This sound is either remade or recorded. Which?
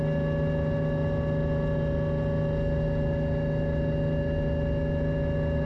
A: recorded